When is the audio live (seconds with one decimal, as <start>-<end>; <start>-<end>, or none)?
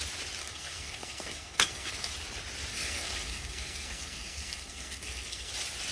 0.0-0.4; 2.1-2.7; 5.5-5.9